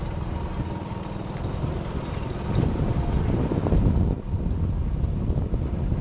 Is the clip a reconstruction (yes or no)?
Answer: no